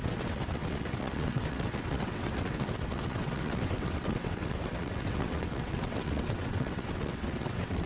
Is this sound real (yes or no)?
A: no